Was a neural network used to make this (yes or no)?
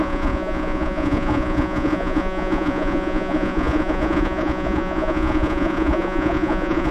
yes